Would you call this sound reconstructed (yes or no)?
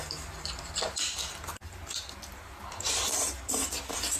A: yes